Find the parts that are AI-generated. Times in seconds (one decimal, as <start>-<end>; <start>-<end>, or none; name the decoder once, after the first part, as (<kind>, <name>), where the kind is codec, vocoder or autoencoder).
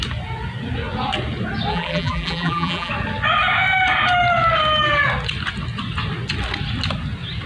1.7-2.9 (vocoder, BigVGAN v2)